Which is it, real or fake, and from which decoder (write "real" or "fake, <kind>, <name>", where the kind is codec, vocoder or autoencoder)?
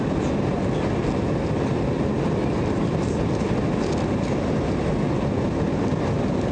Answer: real